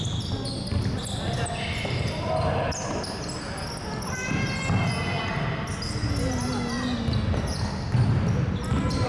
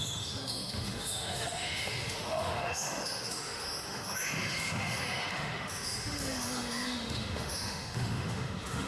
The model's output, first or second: second